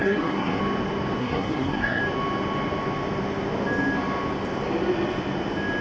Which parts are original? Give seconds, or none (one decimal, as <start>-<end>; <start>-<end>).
0.6-1.2; 2.0-5.8